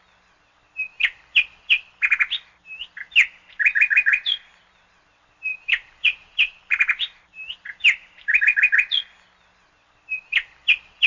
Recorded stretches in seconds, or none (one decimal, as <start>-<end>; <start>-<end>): 0.0-4.1; 4.9-5.5; 8.4-11.1